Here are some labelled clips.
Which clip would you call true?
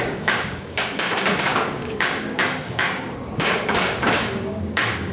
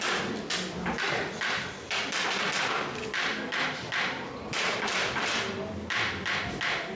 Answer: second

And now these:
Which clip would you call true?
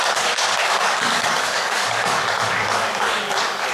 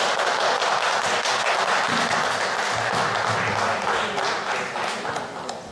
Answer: second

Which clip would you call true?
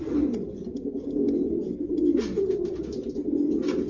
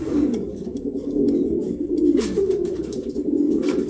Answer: first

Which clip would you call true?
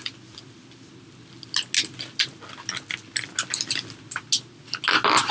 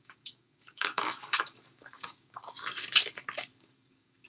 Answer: first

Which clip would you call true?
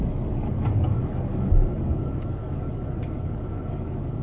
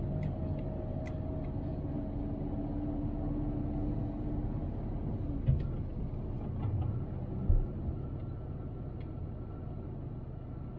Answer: second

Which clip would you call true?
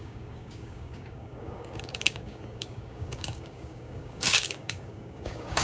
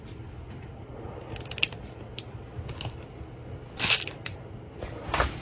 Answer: second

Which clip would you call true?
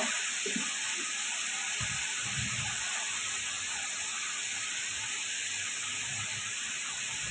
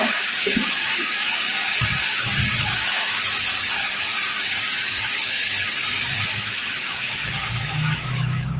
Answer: first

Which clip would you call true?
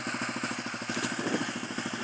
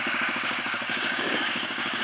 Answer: first